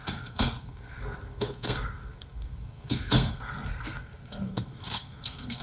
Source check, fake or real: fake